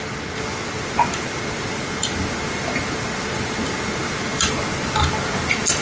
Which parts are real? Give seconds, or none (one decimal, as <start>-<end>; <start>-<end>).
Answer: 0.0-5.8